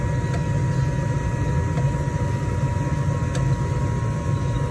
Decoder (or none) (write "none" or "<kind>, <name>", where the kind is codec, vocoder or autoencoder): none